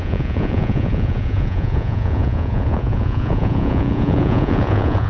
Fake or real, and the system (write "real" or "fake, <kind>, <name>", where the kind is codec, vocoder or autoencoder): fake, vocoder, Vocos